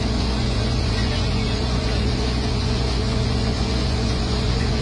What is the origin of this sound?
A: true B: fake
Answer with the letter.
B